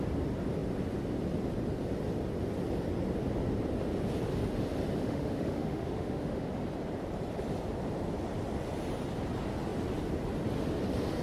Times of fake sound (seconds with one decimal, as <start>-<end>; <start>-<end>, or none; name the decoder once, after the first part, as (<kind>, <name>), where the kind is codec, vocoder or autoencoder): 5.0-6.5 (autoencoder, DAC-VAE)